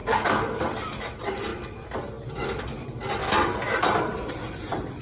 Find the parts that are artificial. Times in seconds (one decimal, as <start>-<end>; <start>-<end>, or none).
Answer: 0.6-1.5; 2.3-5.0